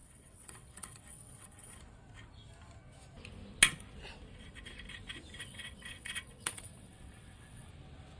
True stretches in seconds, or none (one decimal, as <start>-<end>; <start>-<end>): 1.8-5.4; 7.7-8.2